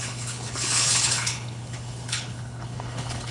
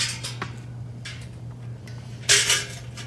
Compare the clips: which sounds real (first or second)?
second